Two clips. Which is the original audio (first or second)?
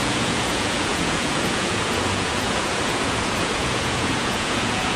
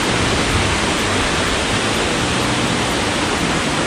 second